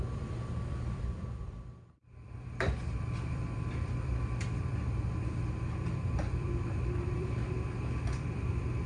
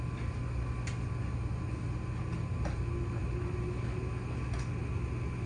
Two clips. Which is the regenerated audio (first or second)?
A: first